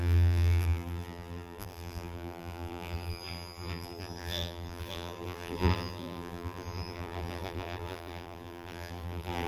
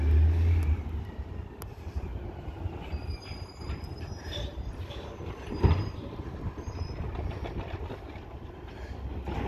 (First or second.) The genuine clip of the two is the second